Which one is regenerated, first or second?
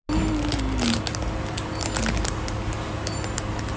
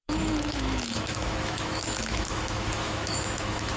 second